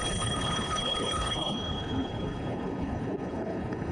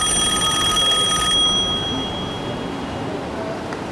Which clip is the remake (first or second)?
first